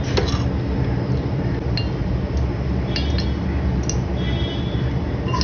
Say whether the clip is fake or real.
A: real